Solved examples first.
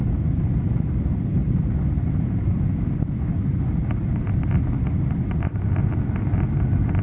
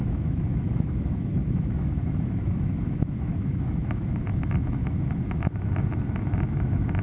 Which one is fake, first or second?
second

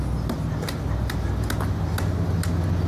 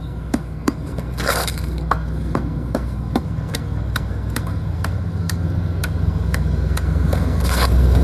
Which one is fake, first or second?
second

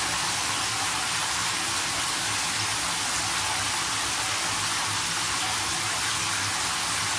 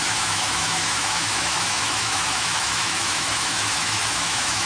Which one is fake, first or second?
second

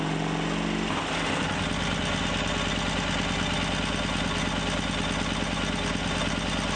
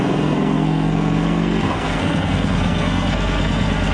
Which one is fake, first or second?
second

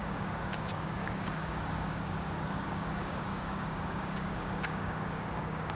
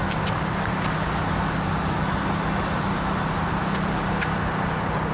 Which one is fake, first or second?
first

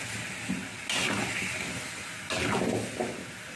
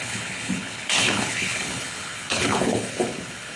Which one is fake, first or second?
second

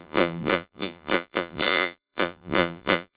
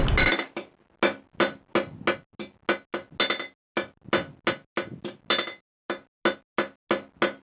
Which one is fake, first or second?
first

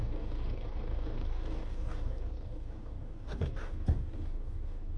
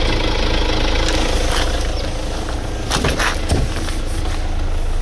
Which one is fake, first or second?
first